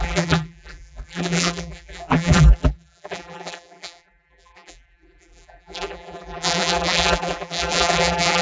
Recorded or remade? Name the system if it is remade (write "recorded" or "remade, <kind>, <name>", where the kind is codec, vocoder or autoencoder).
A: remade, vocoder, BigVGAN v2